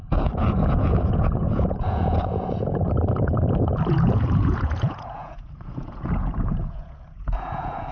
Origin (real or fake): fake